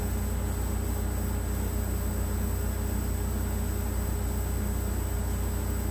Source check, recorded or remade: recorded